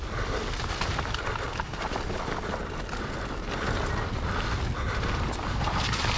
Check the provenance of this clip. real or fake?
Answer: real